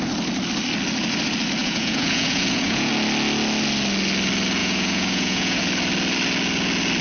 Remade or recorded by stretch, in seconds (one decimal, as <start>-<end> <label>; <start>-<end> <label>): 0.0-1.6 recorded; 1.6-2.9 remade; 2.9-4.6 recorded; 4.6-5.6 remade; 5.6-7.0 recorded